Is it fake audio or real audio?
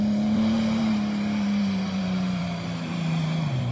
fake